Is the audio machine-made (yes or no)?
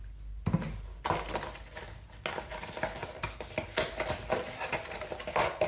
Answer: no